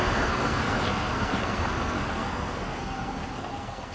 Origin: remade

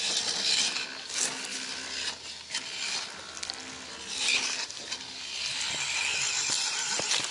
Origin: recorded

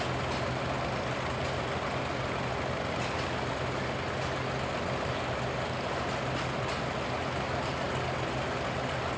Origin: recorded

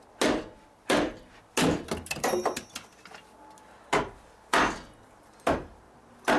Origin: recorded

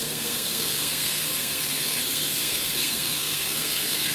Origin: remade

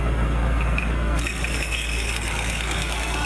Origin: remade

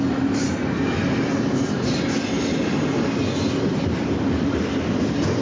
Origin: recorded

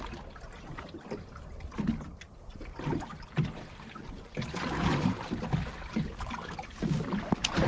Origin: recorded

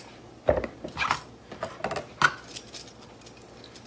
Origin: recorded